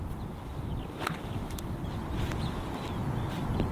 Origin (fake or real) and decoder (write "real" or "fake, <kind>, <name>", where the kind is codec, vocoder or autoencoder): real